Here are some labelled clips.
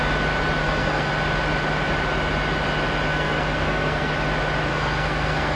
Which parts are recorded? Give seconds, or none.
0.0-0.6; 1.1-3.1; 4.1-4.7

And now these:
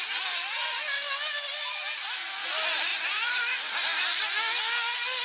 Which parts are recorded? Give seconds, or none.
0.0-5.2

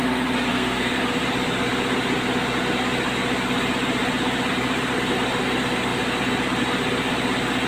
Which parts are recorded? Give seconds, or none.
0.0-0.5; 1.0-7.7

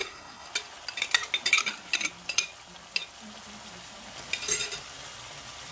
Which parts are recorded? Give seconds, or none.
0.5-5.7

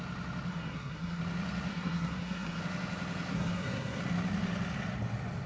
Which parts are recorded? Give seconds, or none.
0.0-0.5; 1.2-1.7; 2.6-3.3; 4.0-5.5

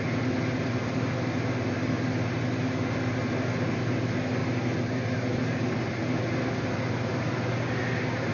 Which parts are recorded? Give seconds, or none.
0.0-8.3